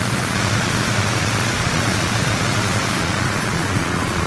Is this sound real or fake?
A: fake